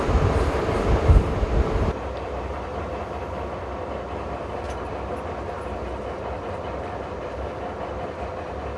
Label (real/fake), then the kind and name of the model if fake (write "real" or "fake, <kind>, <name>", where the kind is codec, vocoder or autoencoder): real